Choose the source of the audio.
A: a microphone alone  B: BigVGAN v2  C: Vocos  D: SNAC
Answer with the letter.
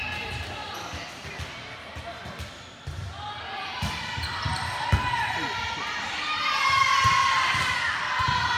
A